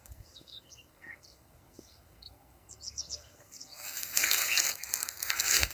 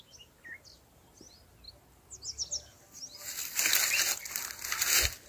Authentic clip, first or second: second